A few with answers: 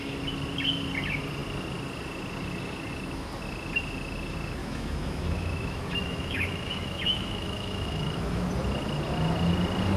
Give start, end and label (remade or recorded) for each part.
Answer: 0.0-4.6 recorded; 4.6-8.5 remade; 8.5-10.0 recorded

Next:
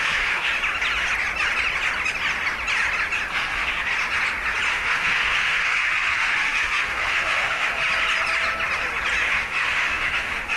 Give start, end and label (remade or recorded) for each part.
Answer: 0.0-0.5 remade; 0.5-3.3 recorded; 3.3-3.9 remade; 3.9-4.7 recorded; 4.7-7.8 remade; 7.8-9.3 recorded; 9.3-10.6 remade

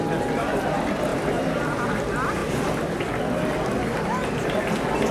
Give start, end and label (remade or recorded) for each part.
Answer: 0.0-5.1 recorded

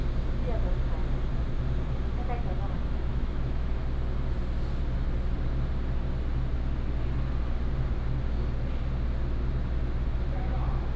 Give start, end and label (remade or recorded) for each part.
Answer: 0.0-3.1 recorded; 3.1-3.8 remade; 3.8-11.0 recorded

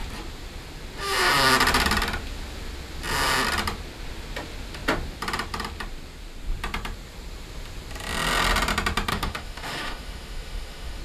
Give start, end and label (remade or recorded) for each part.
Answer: 0.0-9.1 recorded; 9.1-11.0 remade

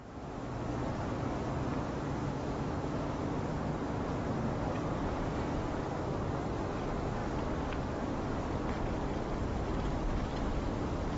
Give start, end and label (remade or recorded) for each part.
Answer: 0.0-0.5 remade; 0.5-2.2 recorded; 2.2-3.3 remade; 3.3-11.2 recorded

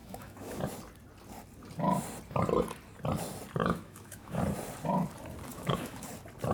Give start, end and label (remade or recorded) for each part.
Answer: 0.0-0.6 remade; 0.6-3.6 recorded; 3.6-4.4 remade; 4.4-5.5 recorded; 5.5-6.1 remade; 6.1-6.5 recorded

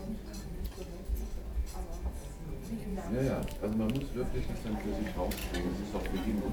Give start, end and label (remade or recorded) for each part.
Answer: 0.0-2.9 recorded; 2.9-4.5 remade; 4.5-6.5 recorded